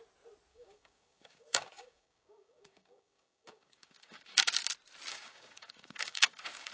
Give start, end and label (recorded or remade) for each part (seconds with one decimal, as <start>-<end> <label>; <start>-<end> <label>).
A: 0.0-0.5 recorded; 0.5-4.5 remade; 4.5-5.1 recorded; 5.1-6.7 remade